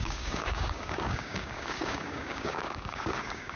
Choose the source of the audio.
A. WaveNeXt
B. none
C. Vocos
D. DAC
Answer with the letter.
D